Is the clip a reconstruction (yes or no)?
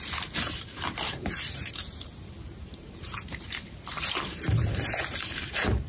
yes